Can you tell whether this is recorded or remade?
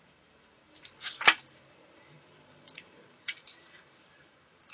remade